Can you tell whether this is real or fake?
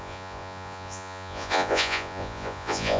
fake